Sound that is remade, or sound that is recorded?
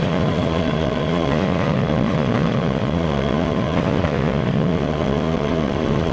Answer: remade